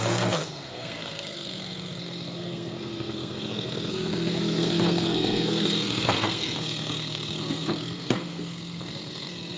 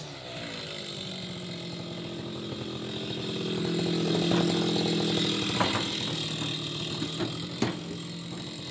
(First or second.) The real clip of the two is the second